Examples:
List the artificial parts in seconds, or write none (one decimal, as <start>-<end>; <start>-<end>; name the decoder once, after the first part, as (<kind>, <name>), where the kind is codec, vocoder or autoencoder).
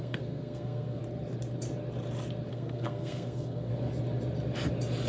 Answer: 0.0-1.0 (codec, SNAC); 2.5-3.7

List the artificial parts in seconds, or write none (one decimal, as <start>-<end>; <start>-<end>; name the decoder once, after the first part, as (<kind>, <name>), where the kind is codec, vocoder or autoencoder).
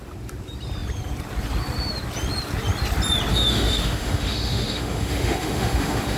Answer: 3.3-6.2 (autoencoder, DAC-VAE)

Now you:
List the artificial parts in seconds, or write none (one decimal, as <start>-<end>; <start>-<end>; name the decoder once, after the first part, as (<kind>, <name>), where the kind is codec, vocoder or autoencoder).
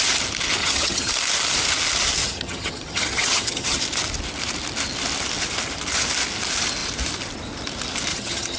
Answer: 0.6-1.1 (vocoder, HiFi-GAN); 2.2-3.8; 8.1-8.6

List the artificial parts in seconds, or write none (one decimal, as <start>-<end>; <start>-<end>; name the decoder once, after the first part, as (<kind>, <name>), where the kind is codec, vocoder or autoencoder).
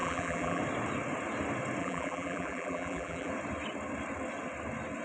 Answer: 0.0-0.6 (vocoder, BigVGAN v2); 1.8-3.3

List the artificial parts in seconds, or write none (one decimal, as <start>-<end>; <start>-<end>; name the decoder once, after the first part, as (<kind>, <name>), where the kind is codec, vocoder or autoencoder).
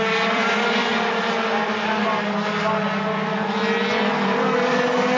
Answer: 0.0-0.8 (vocoder, BigVGAN v2); 3.9-5.2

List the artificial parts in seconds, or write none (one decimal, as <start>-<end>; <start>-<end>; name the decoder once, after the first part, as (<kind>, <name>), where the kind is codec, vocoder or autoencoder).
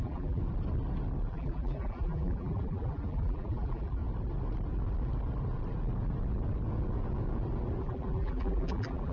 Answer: 0.0-0.4 (vocoder, BigVGAN v2); 1.3-4.0; 7.8-9.1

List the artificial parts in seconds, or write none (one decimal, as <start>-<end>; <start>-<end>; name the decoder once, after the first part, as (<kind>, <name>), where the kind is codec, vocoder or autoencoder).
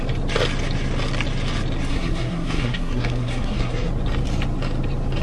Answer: 1.9-3.9 (codec, SNAC)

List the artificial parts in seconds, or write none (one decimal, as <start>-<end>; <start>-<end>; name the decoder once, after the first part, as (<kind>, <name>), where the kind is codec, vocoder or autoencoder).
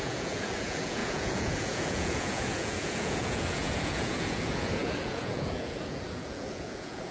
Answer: 0.0-7.1 (vocoder, Vocos)